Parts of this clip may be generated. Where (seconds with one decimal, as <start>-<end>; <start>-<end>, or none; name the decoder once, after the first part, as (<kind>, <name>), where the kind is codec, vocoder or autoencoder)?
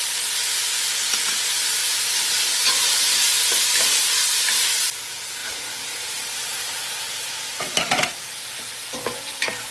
5.4-9.7 (vocoder, BigVGAN v2)